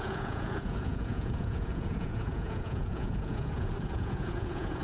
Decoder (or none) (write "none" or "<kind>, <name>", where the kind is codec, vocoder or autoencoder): vocoder, Vocos